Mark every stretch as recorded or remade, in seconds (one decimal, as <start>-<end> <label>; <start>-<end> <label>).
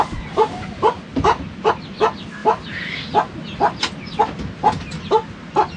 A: 0.0-1.1 recorded; 1.1-1.7 remade; 1.7-5.8 recorded